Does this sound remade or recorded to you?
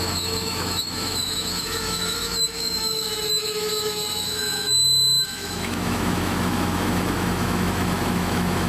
remade